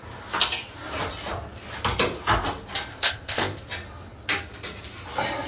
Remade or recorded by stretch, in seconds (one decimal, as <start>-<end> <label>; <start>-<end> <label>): 0.0-2.9 recorded; 2.9-3.6 remade; 3.6-5.5 recorded